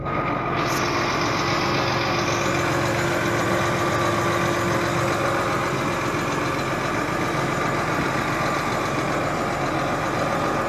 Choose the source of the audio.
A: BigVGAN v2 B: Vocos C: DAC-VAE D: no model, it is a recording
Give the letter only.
D